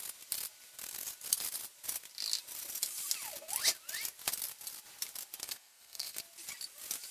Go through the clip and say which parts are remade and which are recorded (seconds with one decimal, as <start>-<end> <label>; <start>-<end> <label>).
0.0-5.4 recorded; 5.4-6.2 remade; 6.2-7.1 recorded